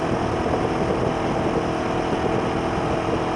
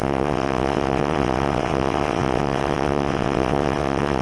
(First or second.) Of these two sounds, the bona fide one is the first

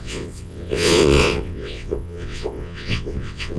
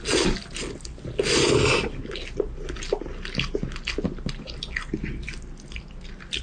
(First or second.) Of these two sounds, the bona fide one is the second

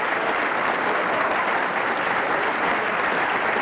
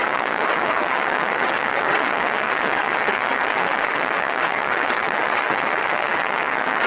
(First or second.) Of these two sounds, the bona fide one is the first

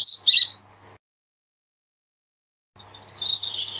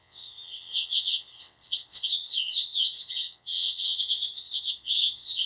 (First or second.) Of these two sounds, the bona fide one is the first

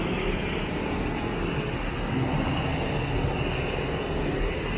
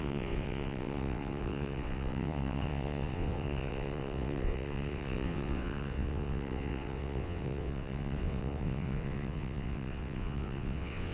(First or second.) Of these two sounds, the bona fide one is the first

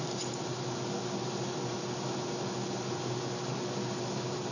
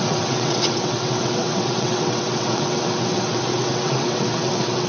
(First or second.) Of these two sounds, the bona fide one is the first